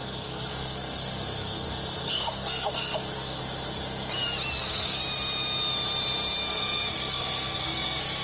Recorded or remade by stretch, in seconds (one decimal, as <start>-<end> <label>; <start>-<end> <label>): 0.0-3.4 remade; 3.4-4.6 recorded; 4.6-5.0 remade; 5.0-6.5 recorded; 6.5-8.2 remade